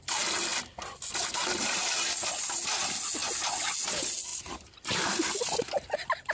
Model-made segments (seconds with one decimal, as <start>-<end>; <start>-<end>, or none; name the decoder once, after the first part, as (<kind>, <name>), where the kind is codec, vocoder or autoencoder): none